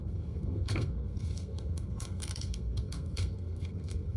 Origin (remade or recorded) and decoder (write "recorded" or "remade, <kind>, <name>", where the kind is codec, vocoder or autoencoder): remade, codec, SNAC